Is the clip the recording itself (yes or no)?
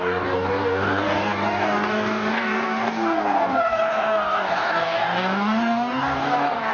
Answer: no